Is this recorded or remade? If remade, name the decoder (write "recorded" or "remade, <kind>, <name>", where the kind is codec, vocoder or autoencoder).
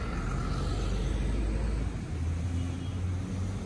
recorded